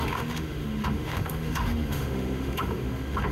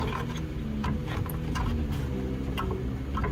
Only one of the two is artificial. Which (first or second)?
first